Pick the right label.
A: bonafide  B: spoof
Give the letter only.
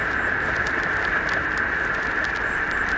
A